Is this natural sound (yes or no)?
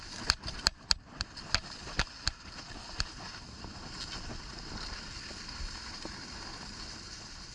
yes